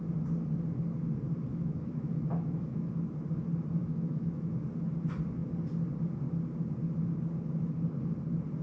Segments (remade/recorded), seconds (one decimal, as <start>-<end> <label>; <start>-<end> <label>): 0.0-1.5 recorded; 1.5-2.9 remade; 2.9-3.8 recorded; 3.8-4.5 remade; 4.5-8.6 recorded